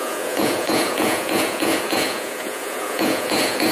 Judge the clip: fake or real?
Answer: fake